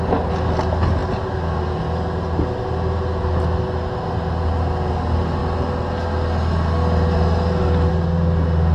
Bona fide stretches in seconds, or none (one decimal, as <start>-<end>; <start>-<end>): 0.0-8.7

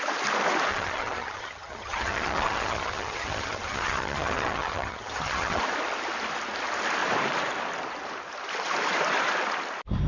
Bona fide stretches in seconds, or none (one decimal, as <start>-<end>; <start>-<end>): 0.0-0.7; 5.6-10.1

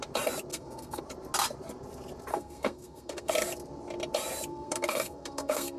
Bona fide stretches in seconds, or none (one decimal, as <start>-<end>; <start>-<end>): 0.0-0.5; 1.0-2.3; 3.3-4.5

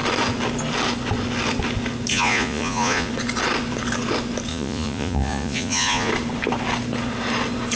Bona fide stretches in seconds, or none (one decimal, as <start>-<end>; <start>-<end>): 0.0-2.1; 3.1-4.5; 6.1-7.8

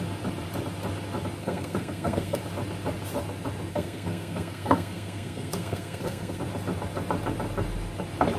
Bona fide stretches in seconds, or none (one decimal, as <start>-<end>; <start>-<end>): 0.0-1.4; 2.4-3.7; 6.4-8.4

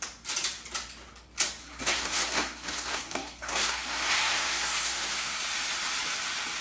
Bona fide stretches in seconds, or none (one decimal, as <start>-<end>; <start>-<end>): 0.0-1.6; 5.4-6.6

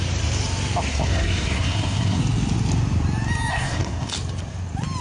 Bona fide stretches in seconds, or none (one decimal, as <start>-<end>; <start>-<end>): 0.0-0.9; 2.2-3.5; 4.1-5.0

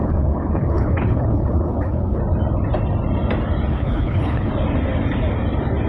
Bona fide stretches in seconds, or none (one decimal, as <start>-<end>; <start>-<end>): 2.2-3.7; 4.5-5.9